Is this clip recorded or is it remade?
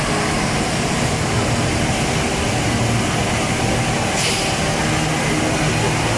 recorded